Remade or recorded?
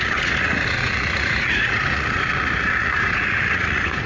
remade